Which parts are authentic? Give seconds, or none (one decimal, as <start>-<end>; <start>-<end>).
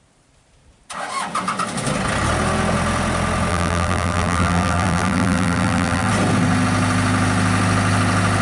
0.0-3.5; 6.1-8.4